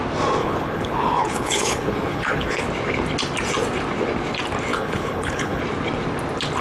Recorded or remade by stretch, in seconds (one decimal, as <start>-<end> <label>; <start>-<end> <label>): 0.0-0.4 recorded; 0.4-2.6 remade; 2.6-4.7 recorded; 4.7-5.6 remade; 5.6-6.6 recorded